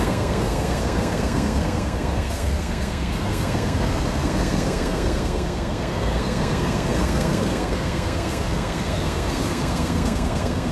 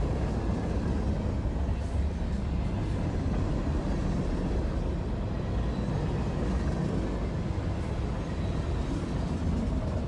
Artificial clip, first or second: first